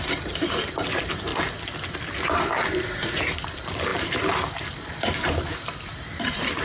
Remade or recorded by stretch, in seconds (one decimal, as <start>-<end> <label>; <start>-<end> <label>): 0.0-1.3 remade; 1.3-2.7 recorded; 2.7-6.6 remade

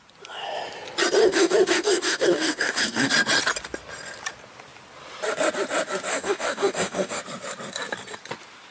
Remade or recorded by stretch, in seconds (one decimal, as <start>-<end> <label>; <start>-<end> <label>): 0.0-1.2 recorded; 1.2-3.1 remade; 3.1-6.1 recorded; 6.1-7.2 remade; 7.2-8.7 recorded

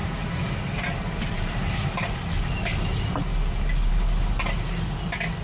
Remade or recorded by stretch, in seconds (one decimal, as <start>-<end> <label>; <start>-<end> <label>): 0.0-2.1 remade; 2.1-5.4 recorded

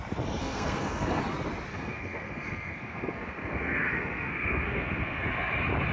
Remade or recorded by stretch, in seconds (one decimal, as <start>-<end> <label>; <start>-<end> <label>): 0.0-0.4 recorded; 0.4-1.2 remade; 1.2-1.7 recorded; 1.7-5.2 remade; 5.2-5.9 recorded